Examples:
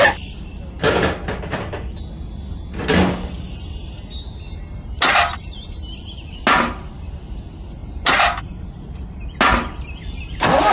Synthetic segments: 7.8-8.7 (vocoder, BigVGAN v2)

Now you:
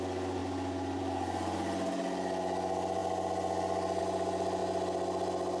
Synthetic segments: none

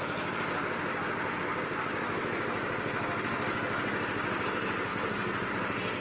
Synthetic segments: none

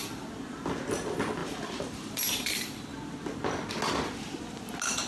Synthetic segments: 1.4-2.5 (vocoder, BigVGAN v2)